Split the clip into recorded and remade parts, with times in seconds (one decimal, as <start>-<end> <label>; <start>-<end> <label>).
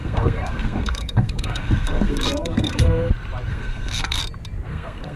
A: 0.0-3.1 remade; 3.1-3.5 recorded; 3.5-4.2 remade; 4.2-4.7 recorded; 4.7-5.2 remade